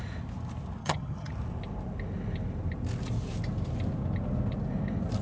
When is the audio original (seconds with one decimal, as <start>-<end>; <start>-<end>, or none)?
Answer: 0.0-0.8; 1.3-5.2